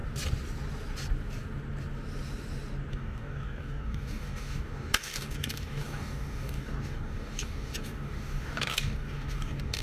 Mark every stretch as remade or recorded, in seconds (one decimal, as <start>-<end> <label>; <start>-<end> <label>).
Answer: 0.0-2.9 recorded; 2.9-9.8 remade